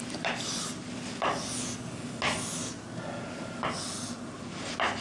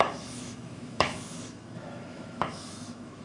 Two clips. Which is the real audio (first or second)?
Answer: first